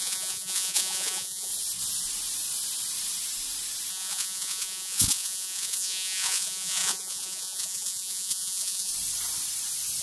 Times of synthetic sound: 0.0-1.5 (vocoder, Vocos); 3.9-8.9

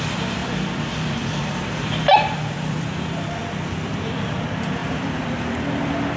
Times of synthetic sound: 0.0-6.2 (vocoder, BigVGAN v2)

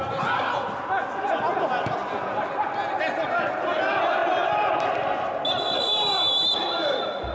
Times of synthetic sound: none

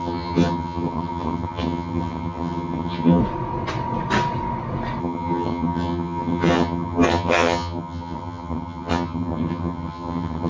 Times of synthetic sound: 0.0-3.2 (vocoder, HiFi-GAN); 5.0-10.5

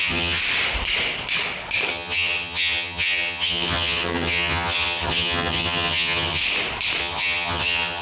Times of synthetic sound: 0.0-0.4 (vocoder, HiFi-GAN); 1.9-6.4; 7.0-8.0

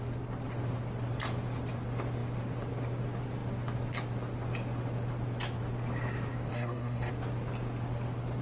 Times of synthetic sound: 6.5-7.1 (codec, SNAC)

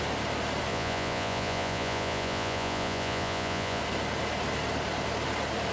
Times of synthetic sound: 0.7-3.8 (vocoder, Vocos)

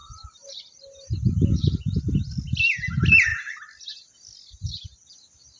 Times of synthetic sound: none